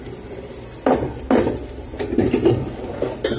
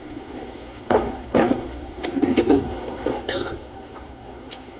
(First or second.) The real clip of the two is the first